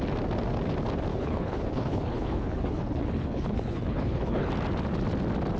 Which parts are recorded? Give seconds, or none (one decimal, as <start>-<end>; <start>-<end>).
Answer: 0.0-1.1; 4.5-5.6